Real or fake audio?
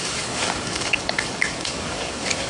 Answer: fake